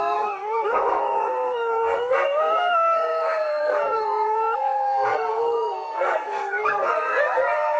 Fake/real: fake